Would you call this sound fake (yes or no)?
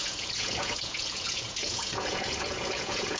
yes